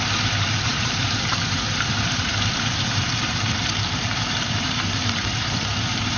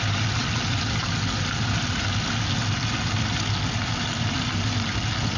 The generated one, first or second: first